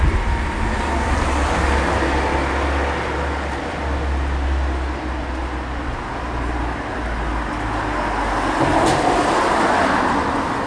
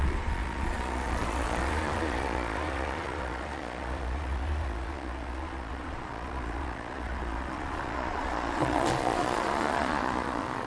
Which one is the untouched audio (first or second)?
first